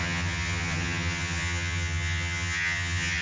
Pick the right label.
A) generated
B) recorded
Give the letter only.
A